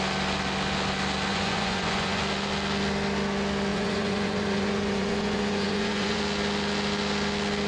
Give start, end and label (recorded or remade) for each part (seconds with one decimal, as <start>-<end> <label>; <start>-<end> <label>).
0.0-1.3 recorded; 1.3-2.2 remade; 2.2-3.7 recorded; 3.7-6.2 remade; 6.2-7.7 recorded